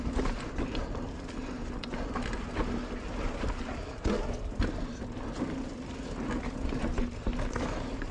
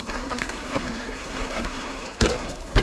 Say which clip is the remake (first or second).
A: second